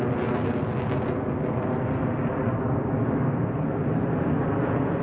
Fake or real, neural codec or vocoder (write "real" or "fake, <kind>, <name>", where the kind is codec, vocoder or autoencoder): real